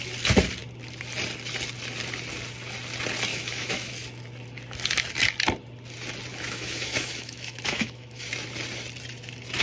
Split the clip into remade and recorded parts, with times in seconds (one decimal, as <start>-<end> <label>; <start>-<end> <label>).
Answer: 0.0-3.3 recorded; 3.3-3.9 remade; 3.9-6.3 recorded; 6.3-8.3 remade; 8.3-9.6 recorded